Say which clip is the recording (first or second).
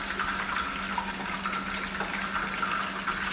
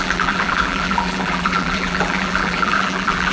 first